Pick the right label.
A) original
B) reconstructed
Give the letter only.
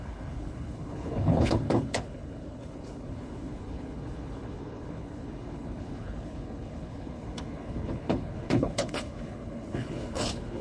B